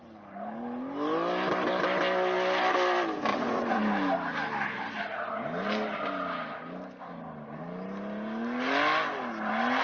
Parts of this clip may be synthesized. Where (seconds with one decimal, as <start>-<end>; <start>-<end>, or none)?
3.3-3.8

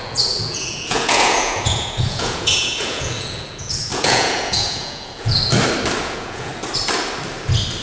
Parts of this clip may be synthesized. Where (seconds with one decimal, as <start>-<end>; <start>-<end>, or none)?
0.0-5.4; 6.0-6.5